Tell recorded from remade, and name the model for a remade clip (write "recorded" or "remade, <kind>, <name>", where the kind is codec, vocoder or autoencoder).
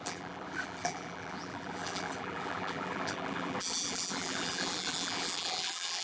remade, vocoder, BigVGAN v2